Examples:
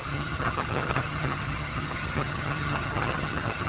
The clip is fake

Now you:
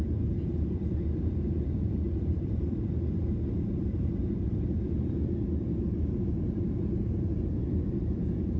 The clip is fake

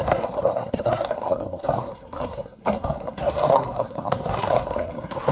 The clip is fake